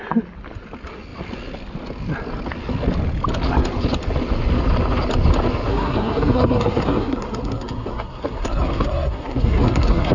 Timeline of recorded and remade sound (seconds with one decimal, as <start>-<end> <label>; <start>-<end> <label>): 0.0-5.7 recorded; 5.7-10.1 remade

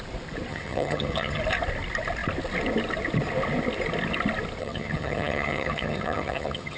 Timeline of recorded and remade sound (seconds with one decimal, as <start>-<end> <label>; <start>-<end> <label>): 0.0-0.5 recorded; 0.5-1.4 remade; 1.4-4.6 recorded; 4.6-6.8 remade

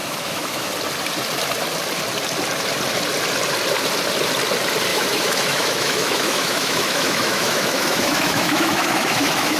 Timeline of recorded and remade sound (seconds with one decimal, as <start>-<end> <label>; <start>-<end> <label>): 0.0-0.7 remade; 0.7-4.9 recorded; 4.9-9.6 remade

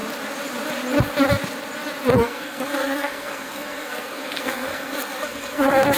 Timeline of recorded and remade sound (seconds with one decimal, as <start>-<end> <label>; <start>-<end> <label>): 0.0-2.1 recorded; 2.1-6.0 remade

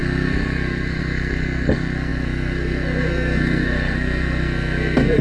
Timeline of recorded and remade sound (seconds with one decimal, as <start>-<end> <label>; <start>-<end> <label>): 0.0-5.2 remade